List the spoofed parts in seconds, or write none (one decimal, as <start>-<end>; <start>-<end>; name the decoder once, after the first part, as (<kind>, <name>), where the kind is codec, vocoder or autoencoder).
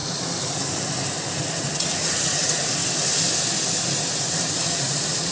1.5-2.8 (vocoder, Vocos); 4.6-5.3